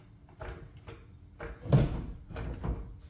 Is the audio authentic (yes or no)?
yes